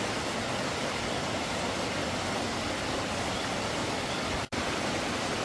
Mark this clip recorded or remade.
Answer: recorded